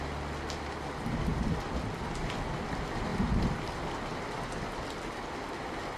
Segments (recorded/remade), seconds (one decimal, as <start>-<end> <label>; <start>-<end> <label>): 0.0-3.1 recorded; 3.1-3.6 remade; 3.6-6.0 recorded